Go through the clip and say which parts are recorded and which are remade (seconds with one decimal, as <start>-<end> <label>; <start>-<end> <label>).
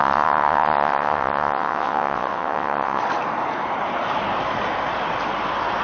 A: 0.0-3.0 remade; 3.0-5.8 recorded